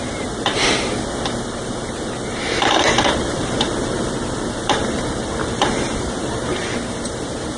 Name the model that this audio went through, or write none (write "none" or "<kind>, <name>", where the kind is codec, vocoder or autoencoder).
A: vocoder, BigVGAN v2